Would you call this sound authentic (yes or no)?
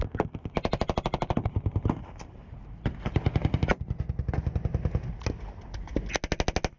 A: yes